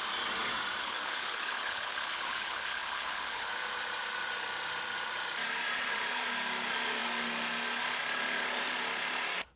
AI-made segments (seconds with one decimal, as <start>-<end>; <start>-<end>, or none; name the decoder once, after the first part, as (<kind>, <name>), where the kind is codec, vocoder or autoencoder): 0.8-3.5 (codec, HILCodec)